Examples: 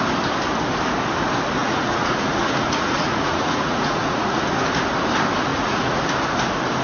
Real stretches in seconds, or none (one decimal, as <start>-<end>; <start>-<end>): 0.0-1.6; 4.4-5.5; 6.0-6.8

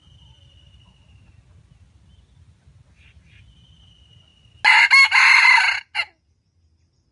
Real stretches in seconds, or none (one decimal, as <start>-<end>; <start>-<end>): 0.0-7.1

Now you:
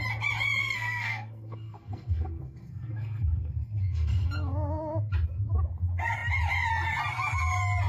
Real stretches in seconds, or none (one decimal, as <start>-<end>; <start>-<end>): 0.0-0.6; 4.3-7.9

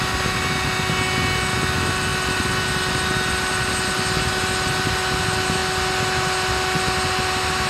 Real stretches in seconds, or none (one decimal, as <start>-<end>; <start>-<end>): 0.0-7.7

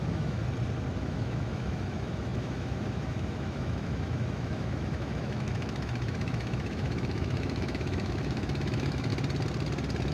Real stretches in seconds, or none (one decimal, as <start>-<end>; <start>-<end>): 0.4-1.0; 9.1-10.1